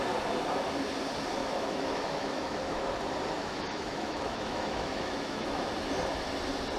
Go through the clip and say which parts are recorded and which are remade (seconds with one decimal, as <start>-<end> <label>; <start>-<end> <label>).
0.0-1.4 recorded; 1.4-2.8 remade; 2.8-3.4 recorded; 3.4-5.6 remade; 5.6-6.8 recorded